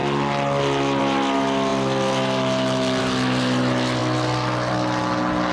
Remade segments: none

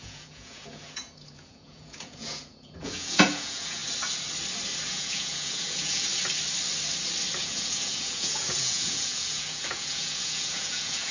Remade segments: 0.0-3.8 (vocoder, Vocos); 4.9-6.1; 7.4-11.1

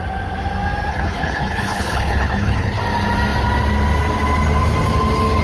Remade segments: 0.9-2.8 (codec, HILCodec)

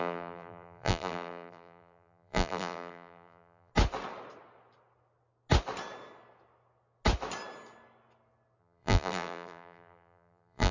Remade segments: 0.0-3.7 (vocoder, BigVGAN v2); 8.6-10.7

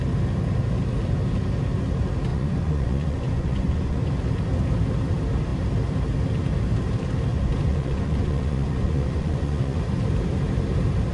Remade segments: 2.3-4.1 (vocoder, Vocos); 7.3-9.8